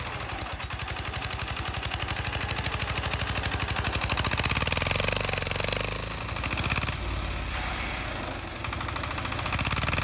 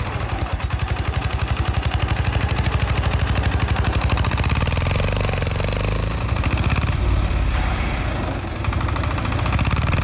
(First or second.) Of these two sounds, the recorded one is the first